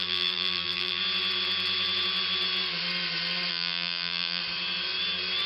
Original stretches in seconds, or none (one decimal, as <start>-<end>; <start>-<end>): 1.0-3.5; 4.4-5.5